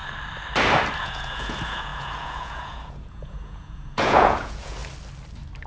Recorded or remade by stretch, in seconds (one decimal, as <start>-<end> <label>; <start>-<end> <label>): 0.0-1.0 recorded; 1.0-4.8 remade; 4.8-5.7 recorded